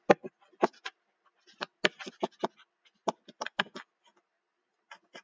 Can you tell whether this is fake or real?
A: real